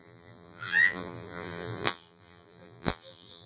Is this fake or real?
fake